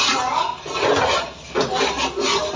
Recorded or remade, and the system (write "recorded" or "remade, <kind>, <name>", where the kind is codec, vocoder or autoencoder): recorded